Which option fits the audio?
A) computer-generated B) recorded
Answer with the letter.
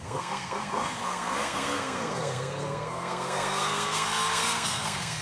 A